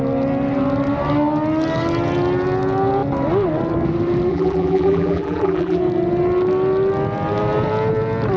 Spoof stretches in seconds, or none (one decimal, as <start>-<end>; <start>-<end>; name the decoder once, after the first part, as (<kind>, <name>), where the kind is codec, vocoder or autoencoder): 4.3-5.8 (vocoder, BigVGAN v2)